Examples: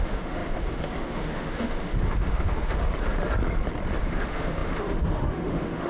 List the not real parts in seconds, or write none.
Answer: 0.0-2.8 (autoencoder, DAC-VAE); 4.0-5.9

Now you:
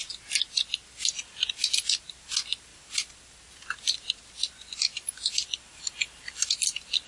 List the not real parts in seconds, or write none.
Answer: none

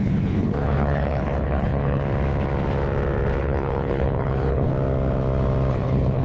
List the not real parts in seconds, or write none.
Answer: 0.0-2.0 (codec, HILCodec); 3.4-4.7; 5.7-6.2